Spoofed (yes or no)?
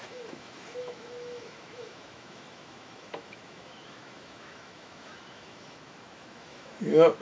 yes